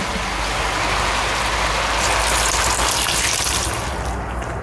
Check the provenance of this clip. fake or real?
real